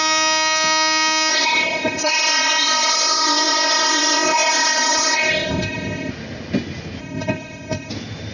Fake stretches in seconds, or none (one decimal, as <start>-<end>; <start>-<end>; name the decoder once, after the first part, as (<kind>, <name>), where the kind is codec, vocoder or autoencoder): 1.3-6.1 (codec, ZipCodec); 7.0-7.9